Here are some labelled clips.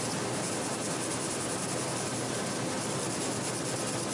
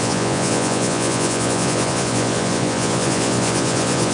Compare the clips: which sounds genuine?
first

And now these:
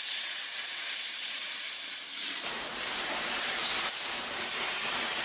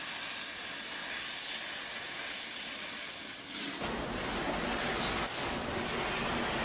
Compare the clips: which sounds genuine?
second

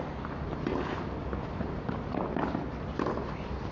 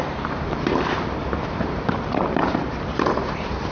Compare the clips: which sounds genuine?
first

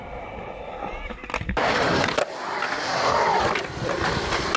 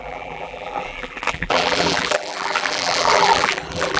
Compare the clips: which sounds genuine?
first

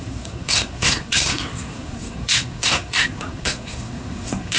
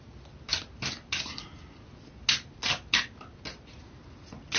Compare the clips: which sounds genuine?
second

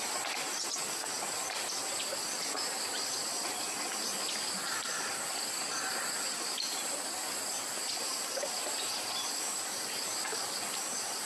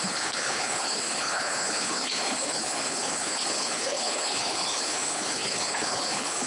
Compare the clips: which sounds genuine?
first